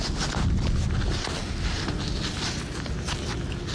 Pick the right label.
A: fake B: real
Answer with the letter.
B